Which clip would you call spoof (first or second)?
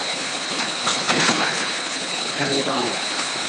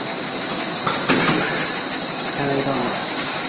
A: first